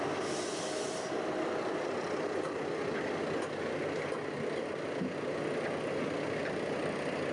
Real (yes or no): yes